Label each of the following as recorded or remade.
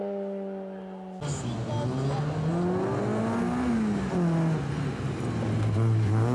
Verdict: recorded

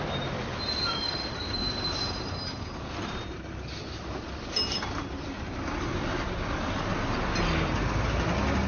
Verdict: recorded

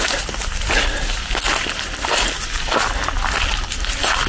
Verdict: recorded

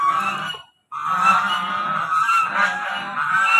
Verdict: recorded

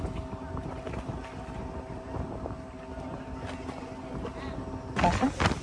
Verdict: recorded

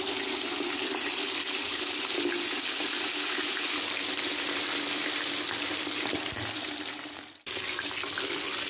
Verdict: recorded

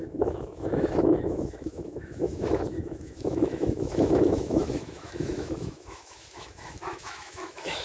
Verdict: remade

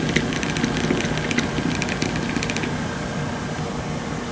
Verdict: recorded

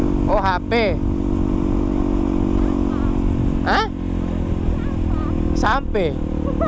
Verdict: recorded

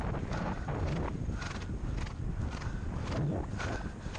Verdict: recorded